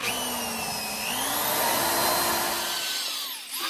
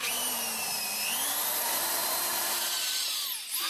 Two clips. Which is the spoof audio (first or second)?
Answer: second